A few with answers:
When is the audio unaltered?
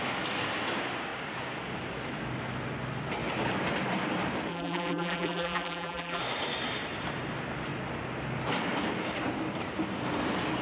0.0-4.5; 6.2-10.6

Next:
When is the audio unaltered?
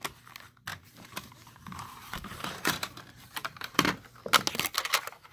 0.0-0.7; 3.9-5.3